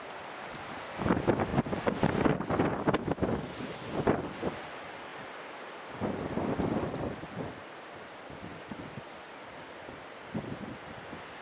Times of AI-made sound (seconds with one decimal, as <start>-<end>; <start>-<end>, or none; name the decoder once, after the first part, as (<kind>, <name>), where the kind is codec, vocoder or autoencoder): none